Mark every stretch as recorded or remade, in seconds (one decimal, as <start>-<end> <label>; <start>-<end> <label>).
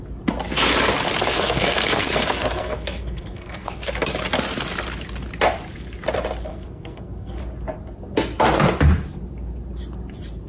0.0-1.3 recorded; 1.3-3.9 remade; 3.9-6.5 recorded; 6.5-7.4 remade; 7.4-10.5 recorded